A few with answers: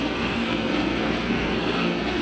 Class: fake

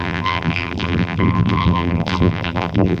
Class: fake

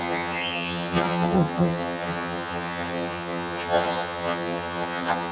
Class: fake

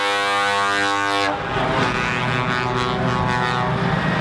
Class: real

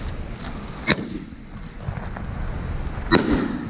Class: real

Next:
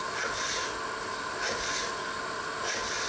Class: real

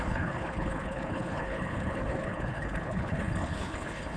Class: fake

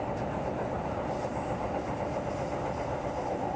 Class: real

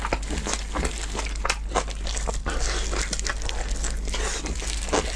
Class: real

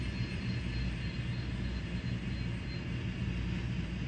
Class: real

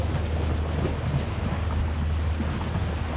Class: real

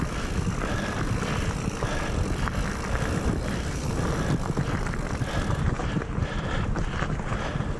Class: fake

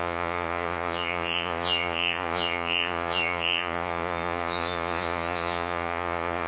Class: fake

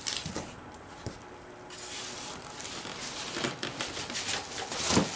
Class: real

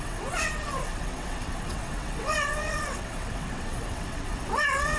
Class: fake